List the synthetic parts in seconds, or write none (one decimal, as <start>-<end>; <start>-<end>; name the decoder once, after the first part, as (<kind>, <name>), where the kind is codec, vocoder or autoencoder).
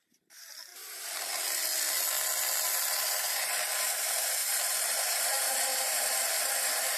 0.0-0.7 (vocoder, BigVGAN v2); 3.8-7.0